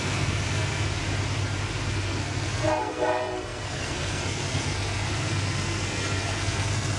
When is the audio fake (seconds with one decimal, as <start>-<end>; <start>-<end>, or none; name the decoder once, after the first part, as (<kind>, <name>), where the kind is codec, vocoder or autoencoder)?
0.0-0.8 (codec, SNAC); 1.9-7.0